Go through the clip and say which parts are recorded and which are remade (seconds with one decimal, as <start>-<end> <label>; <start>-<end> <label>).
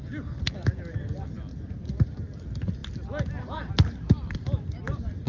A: 0.0-5.3 recorded